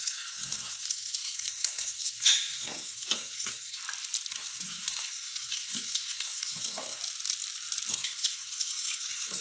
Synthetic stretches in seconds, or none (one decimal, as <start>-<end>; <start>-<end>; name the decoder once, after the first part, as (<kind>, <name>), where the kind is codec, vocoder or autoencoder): 0.0-3.8 (codec, SNAC); 4.3-7.0; 7.9-9.4